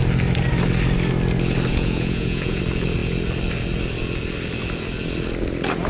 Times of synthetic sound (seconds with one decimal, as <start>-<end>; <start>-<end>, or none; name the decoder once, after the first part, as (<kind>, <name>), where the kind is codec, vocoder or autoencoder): 1.7-2.6 (vocoder, Vocos)